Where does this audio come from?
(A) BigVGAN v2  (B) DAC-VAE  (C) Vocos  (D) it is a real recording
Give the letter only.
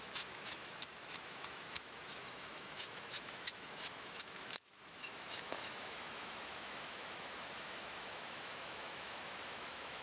B